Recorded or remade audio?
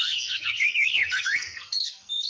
remade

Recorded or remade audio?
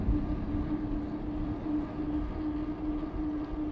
recorded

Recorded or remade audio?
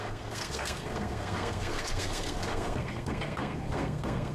remade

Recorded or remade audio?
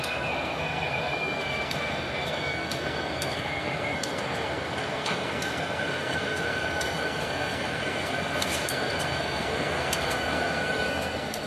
remade